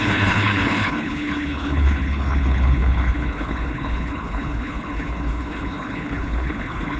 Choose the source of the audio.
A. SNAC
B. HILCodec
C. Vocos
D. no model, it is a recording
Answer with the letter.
B